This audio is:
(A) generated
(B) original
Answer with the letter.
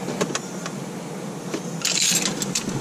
B